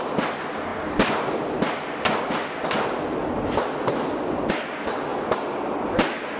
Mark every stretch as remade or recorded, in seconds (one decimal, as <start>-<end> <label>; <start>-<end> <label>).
0.0-6.4 recorded